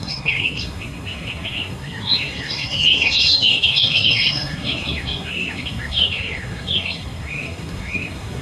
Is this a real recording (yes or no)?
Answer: no